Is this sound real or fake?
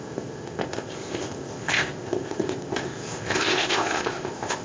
fake